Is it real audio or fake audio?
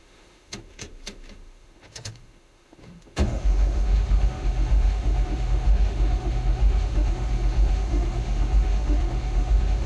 fake